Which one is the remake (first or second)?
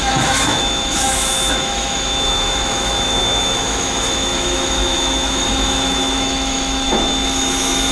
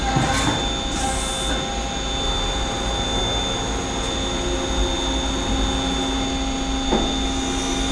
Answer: first